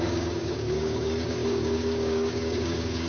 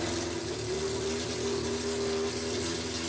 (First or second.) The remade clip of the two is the first